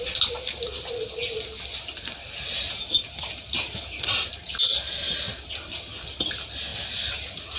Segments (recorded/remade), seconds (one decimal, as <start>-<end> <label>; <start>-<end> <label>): 0.0-7.6 recorded